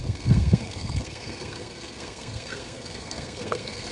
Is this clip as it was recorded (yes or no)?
no